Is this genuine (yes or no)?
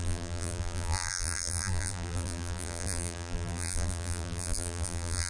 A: no